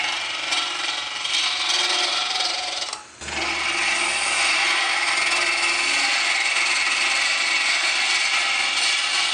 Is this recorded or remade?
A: recorded